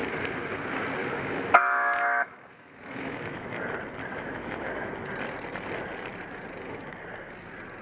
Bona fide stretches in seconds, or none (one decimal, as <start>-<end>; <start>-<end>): 0.0-1.0; 3.6-4.1; 4.9-7.8